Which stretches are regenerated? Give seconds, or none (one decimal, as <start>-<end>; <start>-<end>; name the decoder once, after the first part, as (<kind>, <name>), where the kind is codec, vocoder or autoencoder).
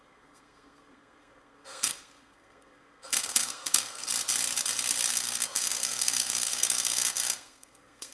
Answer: 0.0-4.1 (codec, SNAC); 5.1-8.1